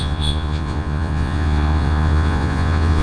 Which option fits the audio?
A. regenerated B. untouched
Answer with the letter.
A